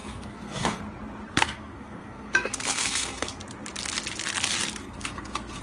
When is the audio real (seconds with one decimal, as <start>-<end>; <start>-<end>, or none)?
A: 0.8-1.3; 3.4-4.8